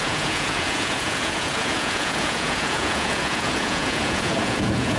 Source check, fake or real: fake